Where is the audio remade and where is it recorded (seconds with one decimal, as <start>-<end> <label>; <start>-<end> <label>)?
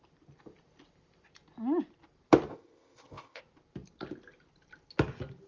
0.0-2.5 recorded; 2.5-3.4 remade; 3.4-5.5 recorded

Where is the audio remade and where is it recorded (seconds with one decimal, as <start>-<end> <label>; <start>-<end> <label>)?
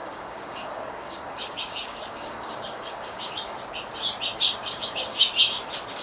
0.0-3.6 remade; 3.6-4.6 recorded; 4.6-5.3 remade; 5.3-6.0 recorded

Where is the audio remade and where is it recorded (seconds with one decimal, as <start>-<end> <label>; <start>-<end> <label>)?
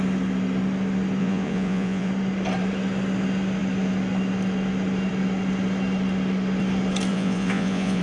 0.0-1.2 recorded; 1.2-2.1 remade; 2.1-7.1 recorded; 7.1-8.0 remade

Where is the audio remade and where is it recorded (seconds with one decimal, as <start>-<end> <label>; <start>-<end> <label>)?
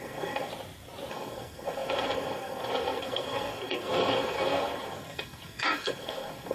0.0-0.5 remade; 0.5-1.1 recorded; 1.1-6.5 remade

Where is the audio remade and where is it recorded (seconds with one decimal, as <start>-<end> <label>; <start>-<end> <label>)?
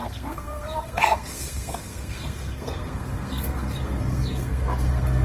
0.0-5.2 remade